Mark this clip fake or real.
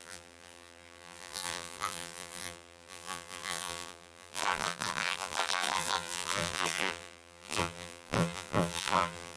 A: fake